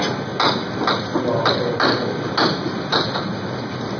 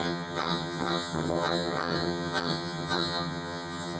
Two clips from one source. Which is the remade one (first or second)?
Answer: second